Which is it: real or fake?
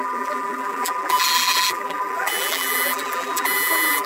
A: fake